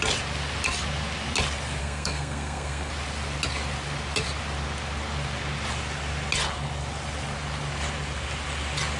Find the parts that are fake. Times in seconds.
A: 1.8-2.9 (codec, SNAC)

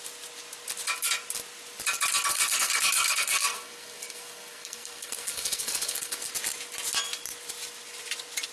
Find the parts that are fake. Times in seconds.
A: 2.3-6.3 (codec, SNAC)